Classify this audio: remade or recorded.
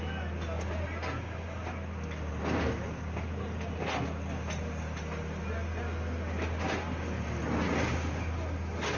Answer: recorded